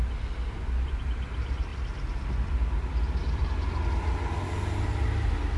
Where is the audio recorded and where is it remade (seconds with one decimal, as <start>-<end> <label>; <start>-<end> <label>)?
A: 0.0-1.7 recorded; 1.7-3.4 remade; 3.4-5.6 recorded